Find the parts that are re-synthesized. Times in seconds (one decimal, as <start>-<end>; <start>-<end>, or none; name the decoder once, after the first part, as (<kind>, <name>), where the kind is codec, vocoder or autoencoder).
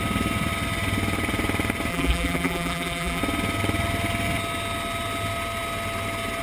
1.9-3.2 (vocoder, BigVGAN v2)